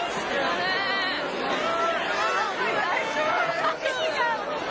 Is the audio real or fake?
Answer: real